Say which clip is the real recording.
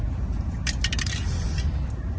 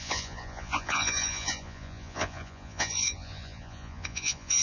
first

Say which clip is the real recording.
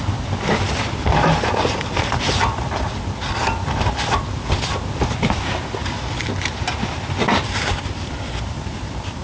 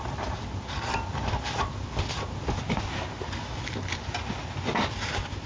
second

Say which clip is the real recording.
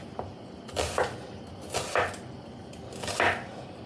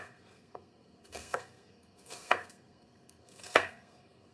first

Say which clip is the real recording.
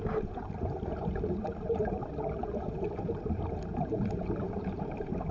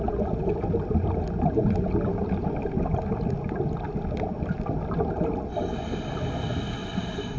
second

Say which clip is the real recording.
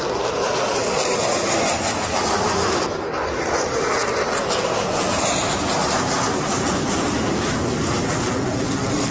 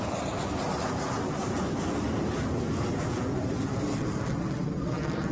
first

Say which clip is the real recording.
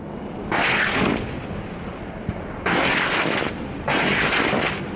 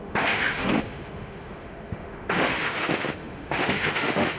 first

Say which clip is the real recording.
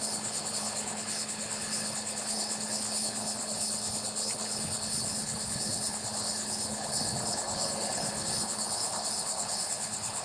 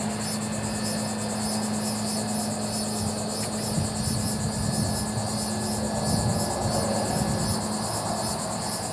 second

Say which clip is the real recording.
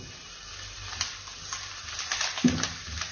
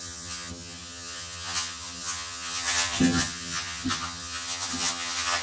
first